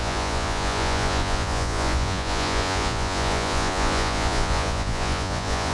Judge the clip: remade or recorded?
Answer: remade